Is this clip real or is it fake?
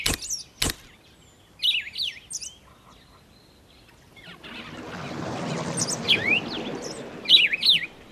real